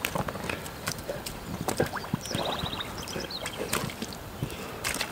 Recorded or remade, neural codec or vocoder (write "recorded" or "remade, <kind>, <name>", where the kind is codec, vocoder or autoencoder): recorded